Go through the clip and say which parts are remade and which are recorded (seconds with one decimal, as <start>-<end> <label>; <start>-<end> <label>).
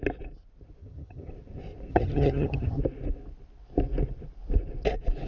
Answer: 0.0-0.8 recorded; 0.8-1.3 remade; 1.3-1.9 recorded; 1.9-2.8 remade; 2.8-5.3 recorded